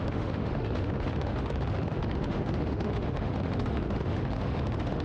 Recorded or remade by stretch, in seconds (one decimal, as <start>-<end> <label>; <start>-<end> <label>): 0.0-5.0 remade